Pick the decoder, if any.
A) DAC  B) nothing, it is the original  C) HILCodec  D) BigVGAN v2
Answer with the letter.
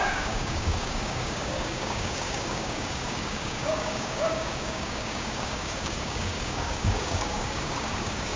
A